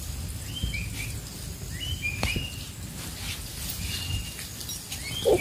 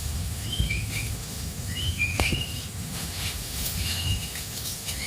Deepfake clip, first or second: second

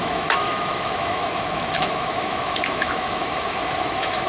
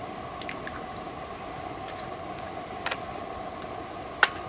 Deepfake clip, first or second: first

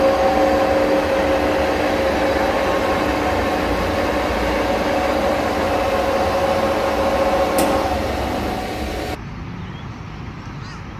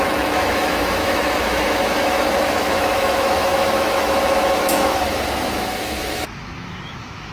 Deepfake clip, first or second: second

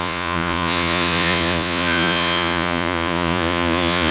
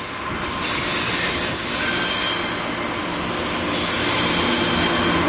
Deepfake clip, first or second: first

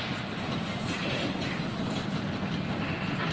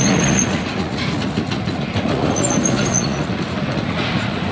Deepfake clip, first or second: second